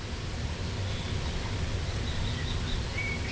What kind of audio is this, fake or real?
fake